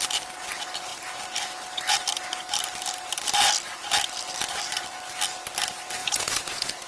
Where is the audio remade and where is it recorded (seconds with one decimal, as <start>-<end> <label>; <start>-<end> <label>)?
0.0-6.0 recorded; 6.0-6.9 remade